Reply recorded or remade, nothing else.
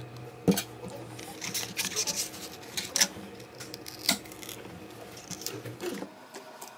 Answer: recorded